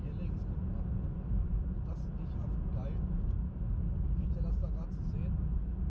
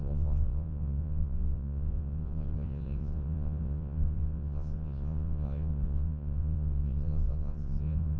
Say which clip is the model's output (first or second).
second